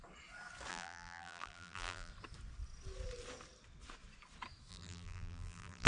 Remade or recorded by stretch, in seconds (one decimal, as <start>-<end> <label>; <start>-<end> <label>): 0.0-0.7 recorded; 0.7-2.1 remade; 2.1-4.7 recorded; 4.7-5.9 remade